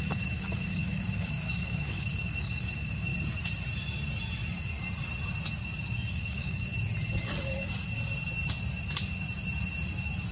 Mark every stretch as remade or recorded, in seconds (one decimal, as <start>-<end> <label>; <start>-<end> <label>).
0.0-3.1 remade; 3.1-6.1 recorded; 6.1-6.7 remade; 6.7-10.3 recorded